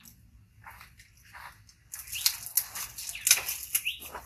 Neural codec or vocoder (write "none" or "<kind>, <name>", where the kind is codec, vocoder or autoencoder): none